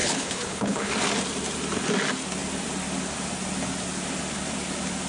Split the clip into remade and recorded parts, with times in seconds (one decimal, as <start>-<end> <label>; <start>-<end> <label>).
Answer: 0.0-0.9 remade; 0.9-5.1 recorded